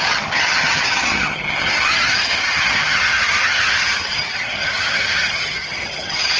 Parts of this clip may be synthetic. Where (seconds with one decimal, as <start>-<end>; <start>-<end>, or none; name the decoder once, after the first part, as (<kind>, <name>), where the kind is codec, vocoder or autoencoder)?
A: 0.0-6.4 (vocoder, HiFi-GAN)